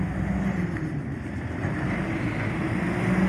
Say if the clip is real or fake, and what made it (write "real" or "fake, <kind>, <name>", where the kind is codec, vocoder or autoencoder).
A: real